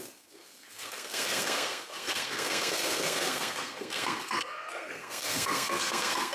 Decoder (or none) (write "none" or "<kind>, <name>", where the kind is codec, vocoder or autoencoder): codec, SNAC